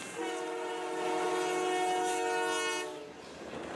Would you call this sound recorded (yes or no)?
yes